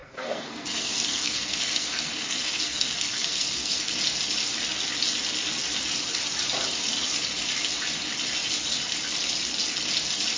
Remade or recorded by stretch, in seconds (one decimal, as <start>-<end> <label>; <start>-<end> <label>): 0.0-3.9 remade; 3.9-10.4 recorded